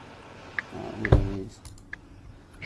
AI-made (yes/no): no